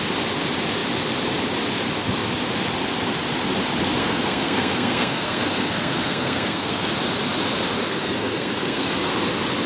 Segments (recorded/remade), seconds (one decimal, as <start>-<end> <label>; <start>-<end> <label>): 0.0-4.0 recorded; 4.0-6.9 remade; 6.9-7.9 recorded; 7.9-9.1 remade; 9.1-9.7 recorded

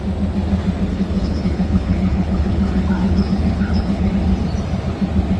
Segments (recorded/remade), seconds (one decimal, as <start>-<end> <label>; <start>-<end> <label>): 0.0-0.9 recorded; 0.9-4.1 remade; 4.1-5.4 recorded

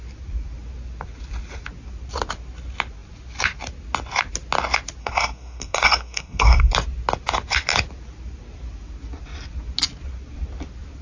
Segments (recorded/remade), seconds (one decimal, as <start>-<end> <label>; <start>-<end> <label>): 0.0-5.0 recorded; 5.0-6.7 remade; 6.7-11.0 recorded

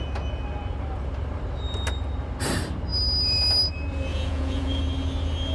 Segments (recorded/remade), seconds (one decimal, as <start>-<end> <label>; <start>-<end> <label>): 0.0-4.1 recorded; 4.1-4.8 remade; 4.8-5.5 recorded

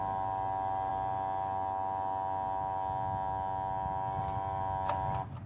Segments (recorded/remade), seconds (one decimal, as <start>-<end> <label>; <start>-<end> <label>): 0.0-5.5 recorded

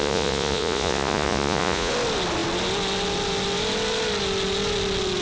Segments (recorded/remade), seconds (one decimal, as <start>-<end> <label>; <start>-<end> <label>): 0.0-1.9 remade; 1.9-5.2 recorded

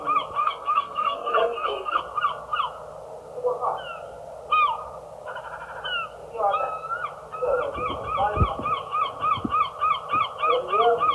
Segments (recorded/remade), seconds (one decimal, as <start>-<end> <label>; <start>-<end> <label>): 0.0-0.4 recorded; 0.4-2.0 remade; 2.0-11.1 recorded